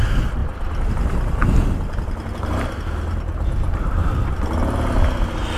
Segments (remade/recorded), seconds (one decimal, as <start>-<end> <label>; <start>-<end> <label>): 0.0-4.0 recorded; 4.0-4.6 remade; 4.6-5.6 recorded